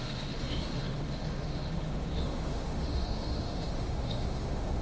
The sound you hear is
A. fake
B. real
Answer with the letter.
A